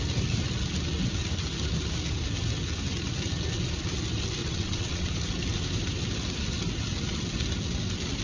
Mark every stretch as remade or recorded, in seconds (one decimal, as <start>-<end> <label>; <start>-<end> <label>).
0.0-4.4 recorded; 4.4-5.1 remade; 5.1-8.2 recorded

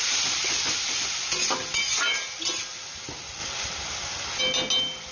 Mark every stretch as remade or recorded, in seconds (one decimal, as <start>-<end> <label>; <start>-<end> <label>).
0.0-5.1 recorded